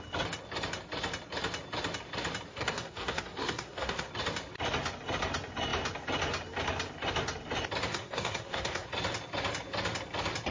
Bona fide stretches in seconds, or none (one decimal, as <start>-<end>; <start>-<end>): 0.0-2.5; 4.1-7.9; 8.9-10.5